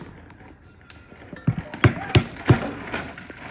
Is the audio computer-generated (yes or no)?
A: no